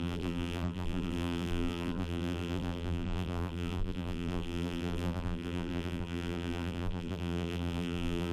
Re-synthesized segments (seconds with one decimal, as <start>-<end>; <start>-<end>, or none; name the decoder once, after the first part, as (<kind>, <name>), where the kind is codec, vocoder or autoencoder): 0.0-8.3 (vocoder, BigVGAN v2)